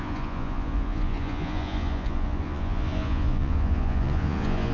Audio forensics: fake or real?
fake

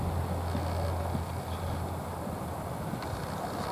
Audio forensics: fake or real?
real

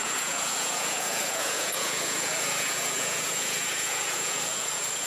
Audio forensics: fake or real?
fake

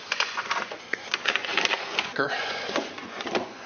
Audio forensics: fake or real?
fake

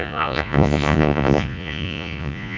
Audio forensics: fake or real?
fake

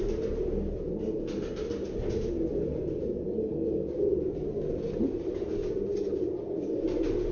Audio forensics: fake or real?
real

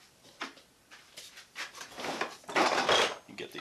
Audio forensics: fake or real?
real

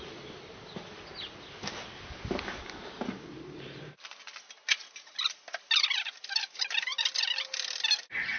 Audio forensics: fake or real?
real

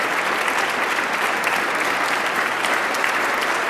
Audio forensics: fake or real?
real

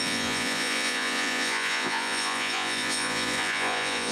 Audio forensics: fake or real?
fake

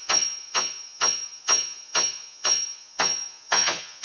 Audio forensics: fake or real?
fake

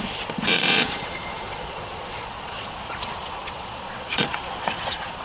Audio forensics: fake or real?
fake